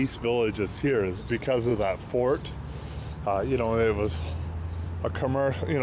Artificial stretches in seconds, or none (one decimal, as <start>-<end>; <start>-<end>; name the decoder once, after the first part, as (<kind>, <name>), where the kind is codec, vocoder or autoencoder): 0.7-1.2 (codec, DAC)